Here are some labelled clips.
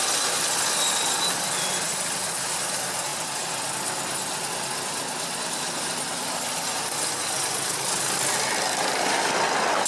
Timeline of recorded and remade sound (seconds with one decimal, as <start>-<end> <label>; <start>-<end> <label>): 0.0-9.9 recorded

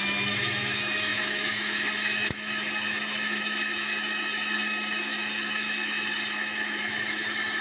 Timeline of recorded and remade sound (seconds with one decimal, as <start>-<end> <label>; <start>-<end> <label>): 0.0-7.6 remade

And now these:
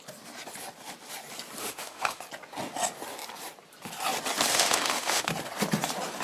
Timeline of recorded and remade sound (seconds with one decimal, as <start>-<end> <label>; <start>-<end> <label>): 0.0-1.6 recorded; 1.6-2.2 remade; 2.2-4.5 recorded; 4.5-5.3 remade; 5.3-6.2 recorded

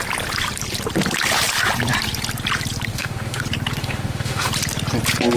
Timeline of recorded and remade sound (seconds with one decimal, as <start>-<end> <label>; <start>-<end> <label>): 0.0-2.9 recorded; 2.9-3.4 remade; 3.4-3.8 recorded; 3.8-4.5 remade; 4.5-5.4 recorded